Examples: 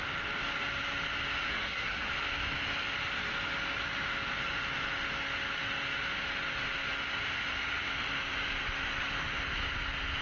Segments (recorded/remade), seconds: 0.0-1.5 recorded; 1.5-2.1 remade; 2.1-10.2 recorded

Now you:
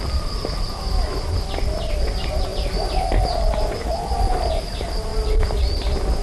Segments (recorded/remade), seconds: 0.0-2.5 remade; 2.5-4.3 recorded; 4.3-5.1 remade; 5.1-5.7 recorded; 5.7-6.2 remade

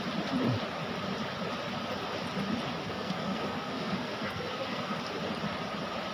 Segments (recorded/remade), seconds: 0.0-2.8 recorded; 2.8-5.0 remade; 5.0-6.1 recorded

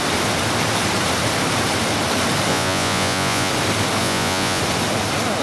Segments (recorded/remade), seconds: 0.0-2.5 recorded; 2.5-3.5 remade; 3.5-4.0 recorded; 4.0-4.6 remade; 4.6-5.4 recorded

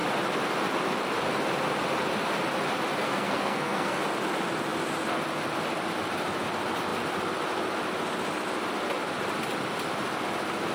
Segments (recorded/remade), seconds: 0.0-3.0 recorded; 3.0-4.0 remade; 4.0-10.7 recorded